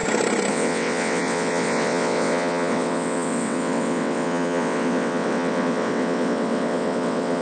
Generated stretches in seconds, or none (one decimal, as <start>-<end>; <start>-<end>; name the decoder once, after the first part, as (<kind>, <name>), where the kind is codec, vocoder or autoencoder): 0.5-7.4 (vocoder, WaveNeXt)